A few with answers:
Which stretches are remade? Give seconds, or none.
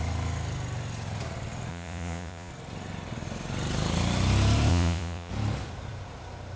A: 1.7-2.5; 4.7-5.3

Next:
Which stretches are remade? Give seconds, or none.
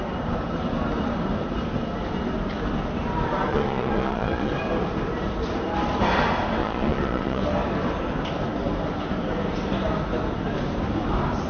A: 3.5-4.5; 6.6-7.4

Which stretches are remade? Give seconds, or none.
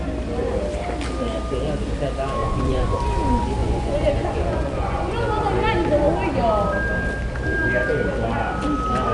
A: 2.4-3.0; 3.6-5.2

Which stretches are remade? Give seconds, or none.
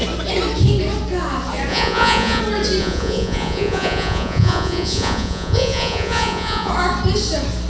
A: 1.7-2.4; 2.8-6.7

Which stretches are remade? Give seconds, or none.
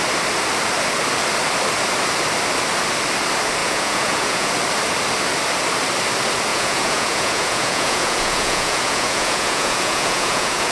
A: 3.6-4.5; 6.5-10.7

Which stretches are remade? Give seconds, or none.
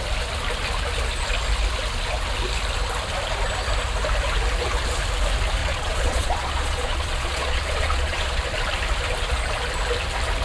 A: 5.6-8.4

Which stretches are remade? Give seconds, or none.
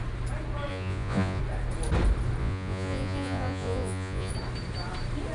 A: 0.7-1.4; 2.4-4.3